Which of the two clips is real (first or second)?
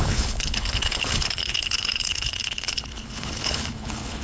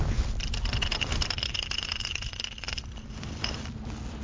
second